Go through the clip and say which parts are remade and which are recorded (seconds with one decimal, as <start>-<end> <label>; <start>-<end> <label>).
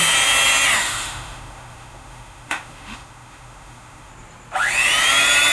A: 0.0-0.8 recorded; 0.8-4.1 remade; 4.1-5.5 recorded